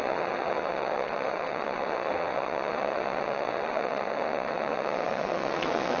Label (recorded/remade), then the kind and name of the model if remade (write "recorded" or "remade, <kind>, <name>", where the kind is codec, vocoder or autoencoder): remade, vocoder, WaveNeXt